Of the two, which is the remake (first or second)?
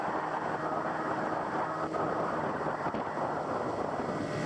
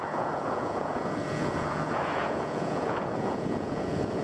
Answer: second